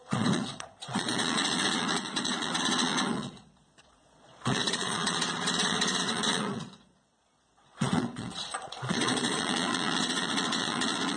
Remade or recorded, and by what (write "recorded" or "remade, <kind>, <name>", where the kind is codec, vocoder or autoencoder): remade, vocoder, Vocos